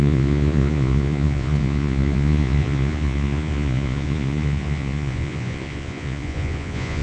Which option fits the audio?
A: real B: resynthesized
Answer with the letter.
B